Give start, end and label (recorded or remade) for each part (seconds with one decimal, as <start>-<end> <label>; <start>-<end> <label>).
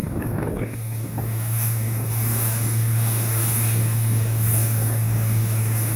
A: 0.0-6.0 remade